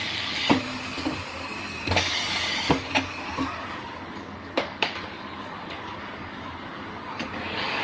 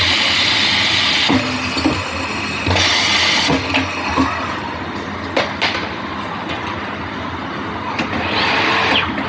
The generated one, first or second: first